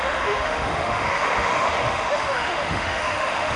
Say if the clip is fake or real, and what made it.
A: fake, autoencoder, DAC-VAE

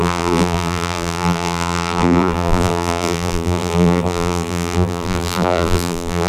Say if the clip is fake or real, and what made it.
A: fake, vocoder, BigVGAN v2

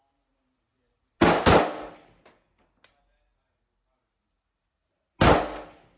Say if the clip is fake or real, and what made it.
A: real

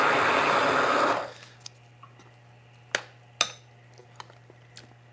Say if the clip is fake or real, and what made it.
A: real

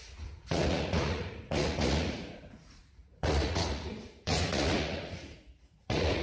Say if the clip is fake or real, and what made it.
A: fake, vocoder, Vocos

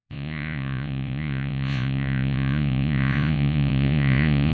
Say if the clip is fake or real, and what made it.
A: fake, vocoder, Vocos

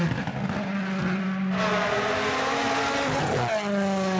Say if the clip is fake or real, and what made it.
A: real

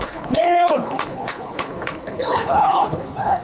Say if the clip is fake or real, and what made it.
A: fake, codec, HILCodec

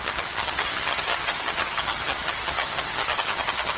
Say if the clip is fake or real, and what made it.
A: fake, vocoder, HiFi-GAN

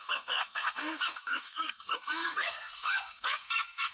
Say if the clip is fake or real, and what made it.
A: fake, codec, SNAC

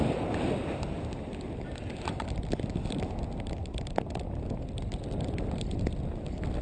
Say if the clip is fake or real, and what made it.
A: real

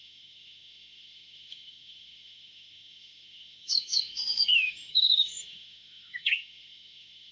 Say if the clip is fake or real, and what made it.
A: fake, autoencoder, DAC-VAE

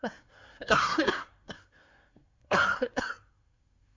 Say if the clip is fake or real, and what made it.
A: fake, codec, SNAC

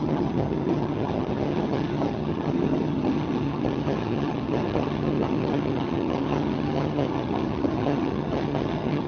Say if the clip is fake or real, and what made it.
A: fake, vocoder, HiFi-GAN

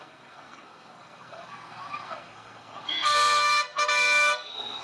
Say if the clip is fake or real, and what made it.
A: fake, codec, SNAC